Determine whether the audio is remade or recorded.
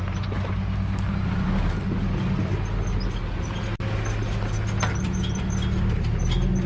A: recorded